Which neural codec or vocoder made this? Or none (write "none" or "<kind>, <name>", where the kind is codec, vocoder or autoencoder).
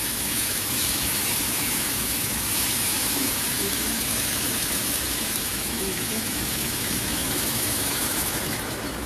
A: autoencoder, DAC-VAE